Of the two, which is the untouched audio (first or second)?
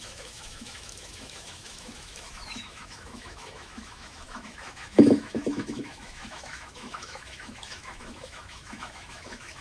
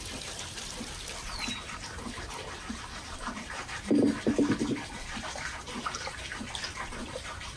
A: second